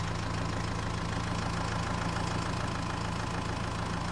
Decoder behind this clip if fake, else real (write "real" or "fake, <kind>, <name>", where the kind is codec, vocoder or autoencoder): real